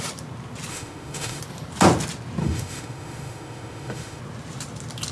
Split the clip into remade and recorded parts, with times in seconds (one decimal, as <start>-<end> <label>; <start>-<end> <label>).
0.0-0.7 recorded; 0.7-1.4 remade; 1.4-2.4 recorded; 2.4-4.2 remade; 4.2-5.1 recorded